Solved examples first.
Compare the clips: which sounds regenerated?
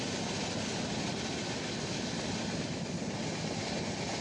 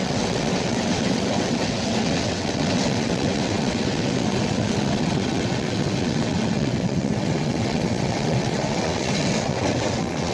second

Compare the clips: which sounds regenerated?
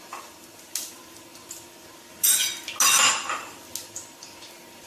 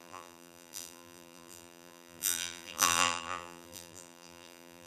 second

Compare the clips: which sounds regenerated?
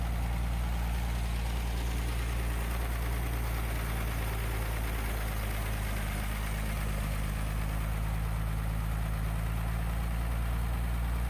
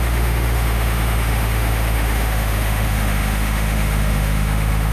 second